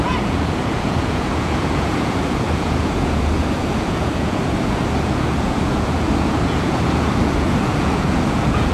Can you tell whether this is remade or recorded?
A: remade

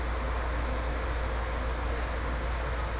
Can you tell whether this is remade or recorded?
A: recorded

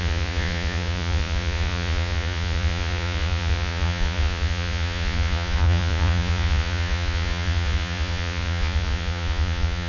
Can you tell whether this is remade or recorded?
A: remade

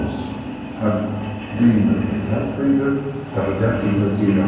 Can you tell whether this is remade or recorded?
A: recorded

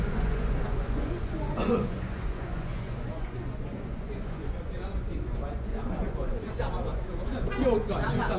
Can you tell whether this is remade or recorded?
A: remade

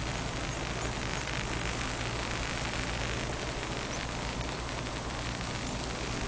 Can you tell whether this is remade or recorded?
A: recorded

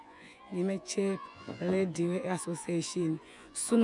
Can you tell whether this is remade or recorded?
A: remade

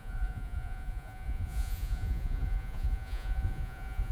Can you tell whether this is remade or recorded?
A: remade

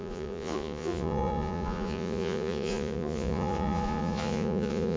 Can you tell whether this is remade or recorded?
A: remade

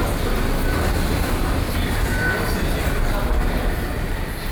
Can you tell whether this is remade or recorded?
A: recorded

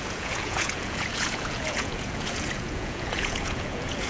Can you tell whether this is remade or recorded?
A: remade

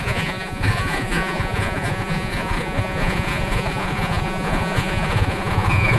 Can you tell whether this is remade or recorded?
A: remade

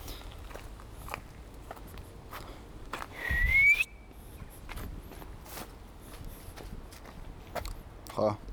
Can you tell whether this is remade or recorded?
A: recorded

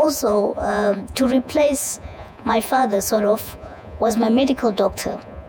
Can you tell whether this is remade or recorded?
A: remade